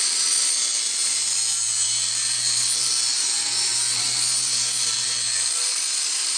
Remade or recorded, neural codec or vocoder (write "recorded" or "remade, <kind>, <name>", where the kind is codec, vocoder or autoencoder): recorded